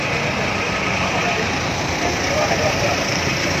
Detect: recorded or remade remade